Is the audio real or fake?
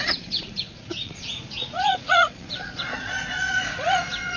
fake